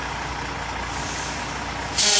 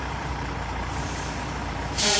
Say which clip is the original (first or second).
first